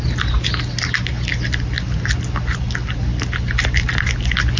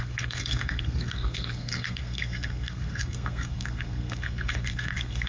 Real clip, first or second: first